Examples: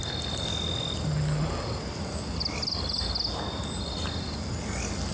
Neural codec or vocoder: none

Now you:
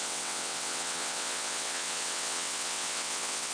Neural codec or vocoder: vocoder, WaveNeXt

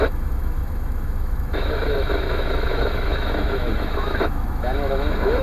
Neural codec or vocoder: autoencoder, DAC-VAE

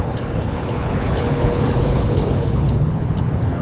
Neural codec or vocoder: codec, HILCodec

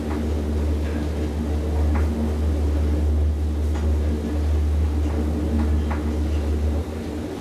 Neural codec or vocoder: none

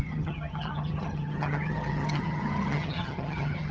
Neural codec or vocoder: vocoder, HiFi-GAN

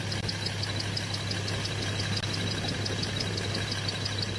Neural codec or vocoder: none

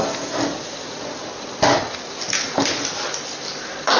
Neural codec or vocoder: none